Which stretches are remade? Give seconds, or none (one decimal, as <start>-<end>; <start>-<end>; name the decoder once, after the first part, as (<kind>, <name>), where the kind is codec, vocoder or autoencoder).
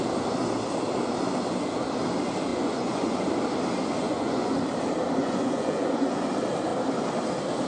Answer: 2.5-3.3 (vocoder, Vocos); 4.0-4.6; 5.2-6.3